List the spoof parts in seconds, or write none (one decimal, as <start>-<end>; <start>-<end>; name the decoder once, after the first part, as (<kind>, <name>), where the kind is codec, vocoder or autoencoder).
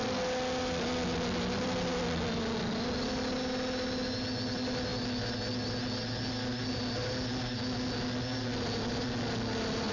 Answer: none